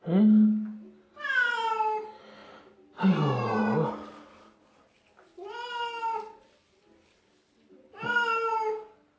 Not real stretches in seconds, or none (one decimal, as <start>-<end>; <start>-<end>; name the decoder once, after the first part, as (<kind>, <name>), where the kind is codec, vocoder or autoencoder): none